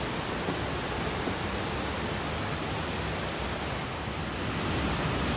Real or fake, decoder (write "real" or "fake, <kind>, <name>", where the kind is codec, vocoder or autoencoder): real